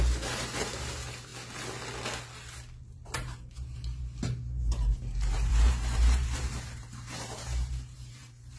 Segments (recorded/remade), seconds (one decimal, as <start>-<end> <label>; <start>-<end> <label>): 0.0-1.3 remade; 1.3-2.8 recorded; 2.8-8.6 remade